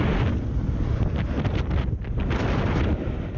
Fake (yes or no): no